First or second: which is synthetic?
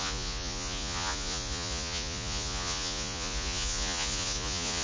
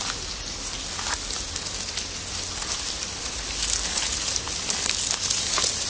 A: first